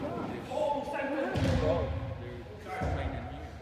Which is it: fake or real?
real